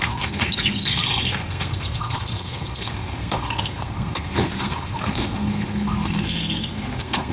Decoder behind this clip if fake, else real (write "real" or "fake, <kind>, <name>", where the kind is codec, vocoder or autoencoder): fake, codec, SNAC